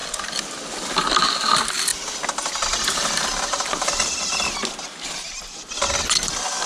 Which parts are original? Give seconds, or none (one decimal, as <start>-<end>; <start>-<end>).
0.0-6.7